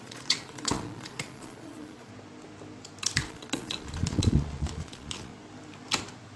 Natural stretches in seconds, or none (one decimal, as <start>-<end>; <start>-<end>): 2.1-3.2; 5.3-6.4